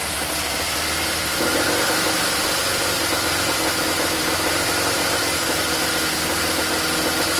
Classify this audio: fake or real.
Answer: real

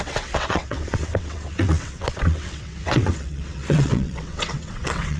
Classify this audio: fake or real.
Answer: fake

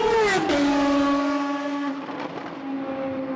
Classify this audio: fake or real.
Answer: real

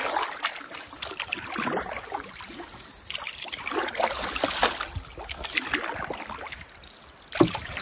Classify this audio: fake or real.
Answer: real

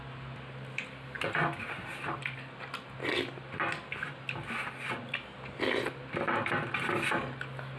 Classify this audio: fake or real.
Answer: real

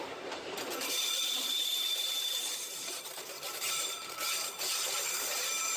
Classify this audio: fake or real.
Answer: fake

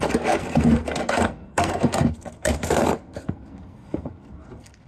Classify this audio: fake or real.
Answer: fake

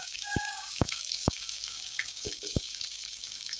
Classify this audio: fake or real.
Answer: fake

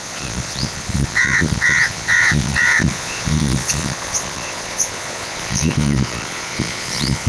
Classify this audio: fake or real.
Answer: fake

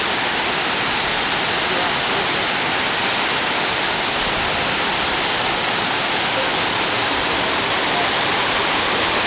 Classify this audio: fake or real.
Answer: real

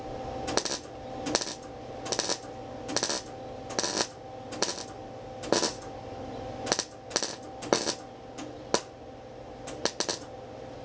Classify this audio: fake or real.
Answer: real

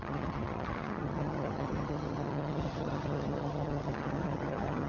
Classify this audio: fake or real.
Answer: fake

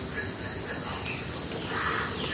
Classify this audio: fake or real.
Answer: real